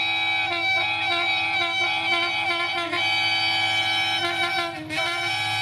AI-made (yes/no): no